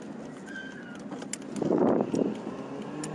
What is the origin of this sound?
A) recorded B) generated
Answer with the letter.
A